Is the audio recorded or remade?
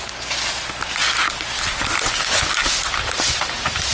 recorded